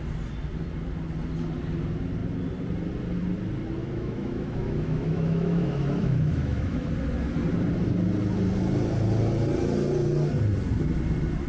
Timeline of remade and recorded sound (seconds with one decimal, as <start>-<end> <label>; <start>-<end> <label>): 0.0-3.8 recorded; 3.8-6.9 remade; 6.9-11.5 recorded